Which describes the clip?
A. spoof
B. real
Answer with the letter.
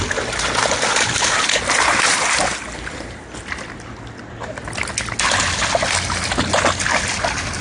B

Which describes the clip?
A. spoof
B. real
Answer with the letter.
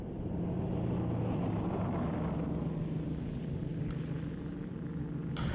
B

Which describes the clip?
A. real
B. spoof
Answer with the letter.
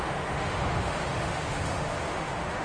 B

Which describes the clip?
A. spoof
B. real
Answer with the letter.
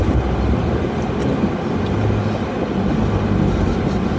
B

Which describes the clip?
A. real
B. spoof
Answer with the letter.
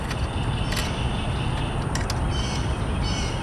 A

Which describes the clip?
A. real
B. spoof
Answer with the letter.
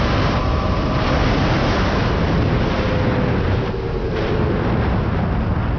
A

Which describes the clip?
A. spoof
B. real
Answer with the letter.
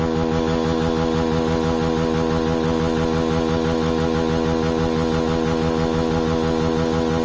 B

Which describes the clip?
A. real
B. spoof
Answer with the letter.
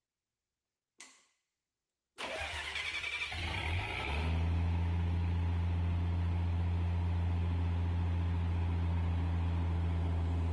A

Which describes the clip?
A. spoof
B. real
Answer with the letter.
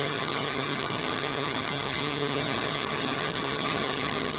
A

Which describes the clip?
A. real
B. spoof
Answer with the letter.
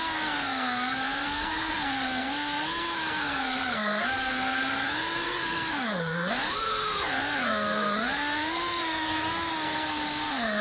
B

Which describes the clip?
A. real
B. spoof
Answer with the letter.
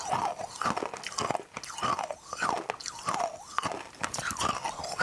A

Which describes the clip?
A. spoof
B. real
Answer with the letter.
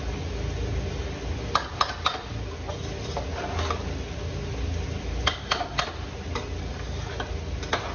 B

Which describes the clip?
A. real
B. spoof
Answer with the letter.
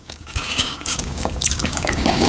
B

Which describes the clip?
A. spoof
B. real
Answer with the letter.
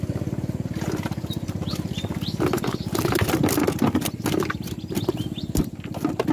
B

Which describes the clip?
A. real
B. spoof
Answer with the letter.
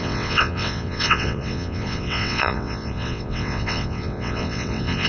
B